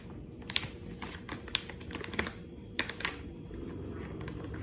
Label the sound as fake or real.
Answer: real